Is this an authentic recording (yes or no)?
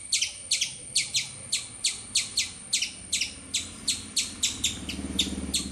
yes